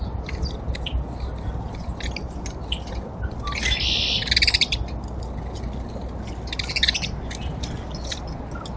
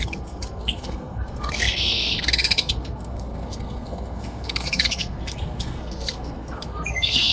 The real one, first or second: first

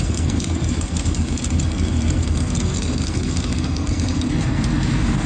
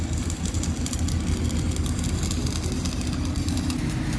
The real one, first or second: second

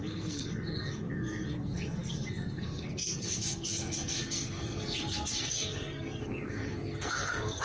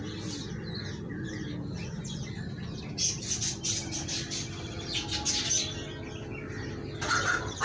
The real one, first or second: second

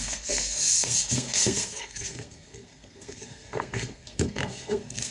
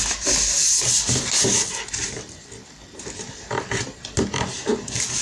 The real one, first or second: second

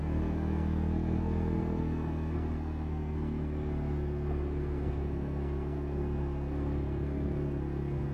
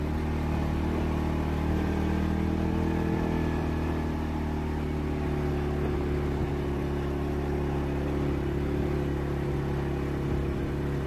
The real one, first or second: second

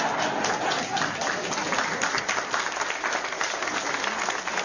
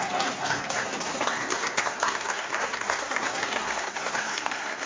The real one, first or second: first